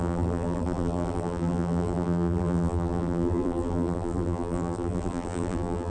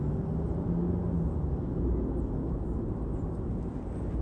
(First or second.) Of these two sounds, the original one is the second